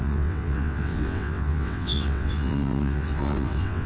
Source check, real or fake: fake